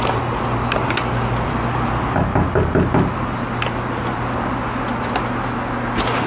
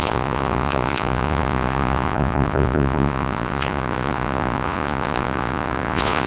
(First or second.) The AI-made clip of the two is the second